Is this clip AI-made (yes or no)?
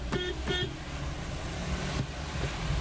no